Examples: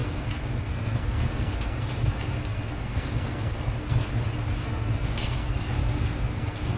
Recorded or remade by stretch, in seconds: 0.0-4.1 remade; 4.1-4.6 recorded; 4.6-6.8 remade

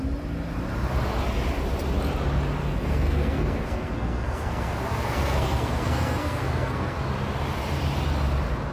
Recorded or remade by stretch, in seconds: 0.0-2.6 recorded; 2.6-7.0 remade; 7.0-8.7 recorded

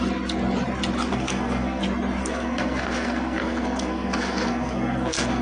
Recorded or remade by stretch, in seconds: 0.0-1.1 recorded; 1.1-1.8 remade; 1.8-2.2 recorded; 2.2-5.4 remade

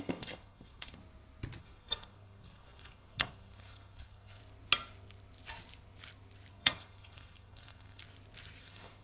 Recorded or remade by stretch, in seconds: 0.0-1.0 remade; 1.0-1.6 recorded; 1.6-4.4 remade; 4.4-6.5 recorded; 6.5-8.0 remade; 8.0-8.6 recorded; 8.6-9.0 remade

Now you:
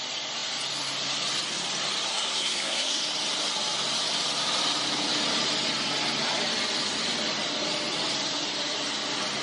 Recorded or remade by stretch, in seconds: 0.0-2.1 recorded; 2.1-3.0 remade; 3.0-9.4 recorded